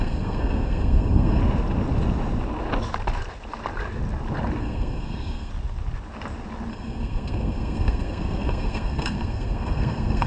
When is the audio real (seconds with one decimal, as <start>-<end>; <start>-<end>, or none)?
1.4-4.6; 5.5-6.7